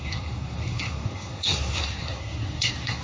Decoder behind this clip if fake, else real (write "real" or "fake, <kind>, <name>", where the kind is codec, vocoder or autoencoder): fake, codec, SNAC